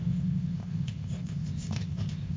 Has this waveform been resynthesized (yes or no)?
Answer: yes